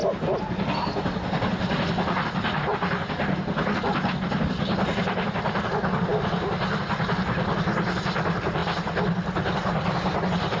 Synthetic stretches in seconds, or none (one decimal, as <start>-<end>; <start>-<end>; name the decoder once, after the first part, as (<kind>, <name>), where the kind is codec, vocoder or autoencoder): none